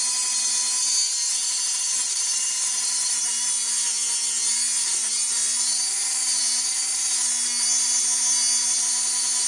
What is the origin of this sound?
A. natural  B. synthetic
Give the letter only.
A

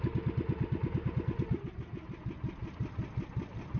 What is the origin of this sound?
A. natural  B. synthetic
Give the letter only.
A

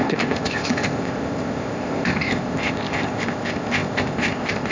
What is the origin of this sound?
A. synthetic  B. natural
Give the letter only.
A